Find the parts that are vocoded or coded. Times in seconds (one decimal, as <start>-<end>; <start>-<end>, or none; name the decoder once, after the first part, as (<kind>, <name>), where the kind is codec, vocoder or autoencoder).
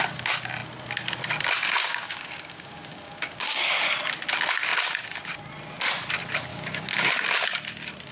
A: 1.8-3.7 (codec, DAC); 6.5-7.1